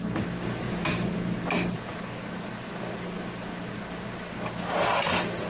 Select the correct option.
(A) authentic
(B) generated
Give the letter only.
A